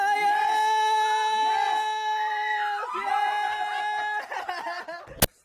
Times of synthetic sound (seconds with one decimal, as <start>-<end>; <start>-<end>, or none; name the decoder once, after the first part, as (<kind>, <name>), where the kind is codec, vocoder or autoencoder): none